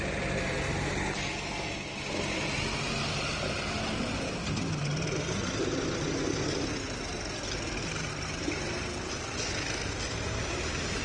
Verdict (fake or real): real